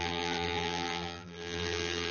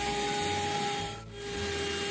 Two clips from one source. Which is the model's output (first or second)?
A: first